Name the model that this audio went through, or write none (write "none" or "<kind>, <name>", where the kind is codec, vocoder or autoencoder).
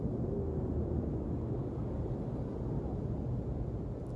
none